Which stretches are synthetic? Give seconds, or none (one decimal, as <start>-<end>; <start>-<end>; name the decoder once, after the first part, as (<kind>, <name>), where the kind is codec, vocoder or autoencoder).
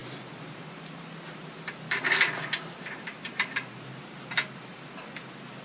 0.0-1.7 (vocoder, BigVGAN v2); 3.1-5.6